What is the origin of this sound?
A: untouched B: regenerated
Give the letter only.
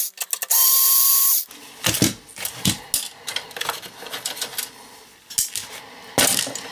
A